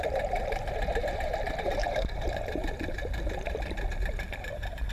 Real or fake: fake